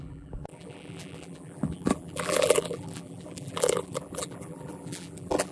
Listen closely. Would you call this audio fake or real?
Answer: fake